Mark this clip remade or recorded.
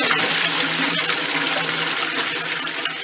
recorded